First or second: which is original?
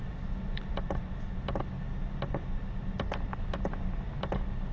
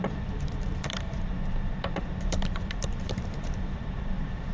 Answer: first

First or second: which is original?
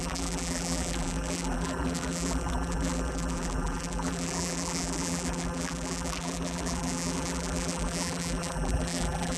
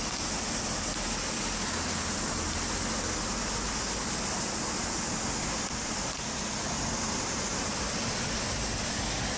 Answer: second